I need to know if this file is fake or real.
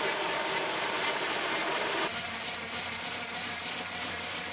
fake